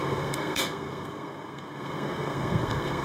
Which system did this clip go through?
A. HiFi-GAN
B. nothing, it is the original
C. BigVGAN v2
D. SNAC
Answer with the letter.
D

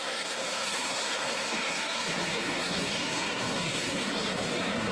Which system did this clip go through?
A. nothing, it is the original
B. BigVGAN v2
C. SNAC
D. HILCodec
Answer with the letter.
C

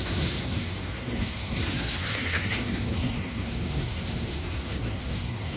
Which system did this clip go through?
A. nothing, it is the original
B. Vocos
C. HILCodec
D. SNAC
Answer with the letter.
D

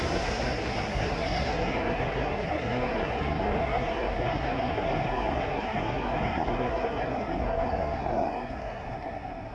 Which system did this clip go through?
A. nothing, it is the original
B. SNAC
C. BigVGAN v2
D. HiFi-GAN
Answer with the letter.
B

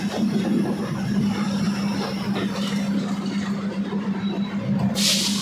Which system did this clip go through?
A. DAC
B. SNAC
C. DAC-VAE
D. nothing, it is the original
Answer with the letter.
D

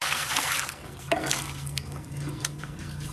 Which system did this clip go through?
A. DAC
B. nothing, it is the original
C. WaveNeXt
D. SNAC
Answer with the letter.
D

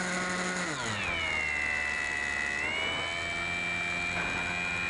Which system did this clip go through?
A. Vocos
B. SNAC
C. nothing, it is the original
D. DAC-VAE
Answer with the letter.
C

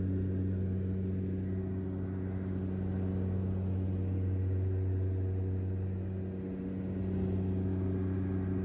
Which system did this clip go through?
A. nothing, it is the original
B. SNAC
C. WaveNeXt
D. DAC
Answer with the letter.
A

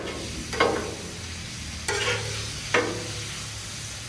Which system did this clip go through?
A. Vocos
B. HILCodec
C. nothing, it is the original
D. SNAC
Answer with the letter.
C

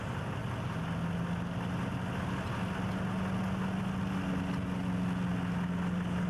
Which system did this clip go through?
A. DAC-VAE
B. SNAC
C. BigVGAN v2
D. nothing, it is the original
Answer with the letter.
D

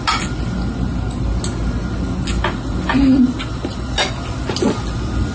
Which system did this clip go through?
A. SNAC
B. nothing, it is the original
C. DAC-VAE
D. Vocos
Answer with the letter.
B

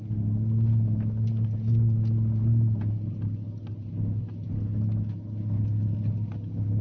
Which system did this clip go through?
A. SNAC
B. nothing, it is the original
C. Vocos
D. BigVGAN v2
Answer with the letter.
B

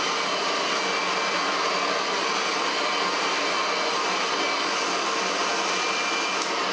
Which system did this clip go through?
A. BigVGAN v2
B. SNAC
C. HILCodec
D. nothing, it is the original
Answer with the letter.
D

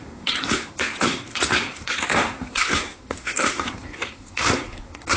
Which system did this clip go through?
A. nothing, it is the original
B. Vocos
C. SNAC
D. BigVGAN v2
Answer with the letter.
C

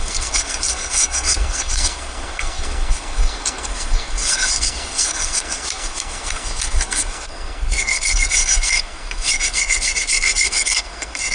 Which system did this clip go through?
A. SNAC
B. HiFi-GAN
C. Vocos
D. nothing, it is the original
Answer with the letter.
A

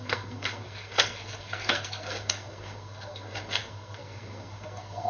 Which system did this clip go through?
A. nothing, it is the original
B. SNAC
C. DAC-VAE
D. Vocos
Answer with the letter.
B